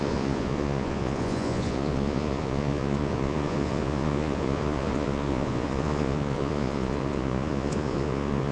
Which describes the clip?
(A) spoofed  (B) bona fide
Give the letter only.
A